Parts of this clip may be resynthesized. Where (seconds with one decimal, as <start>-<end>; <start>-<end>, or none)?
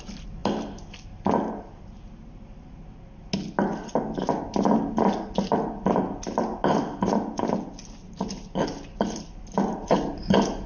none